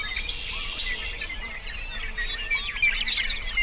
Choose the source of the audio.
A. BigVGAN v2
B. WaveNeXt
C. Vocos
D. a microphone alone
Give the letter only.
D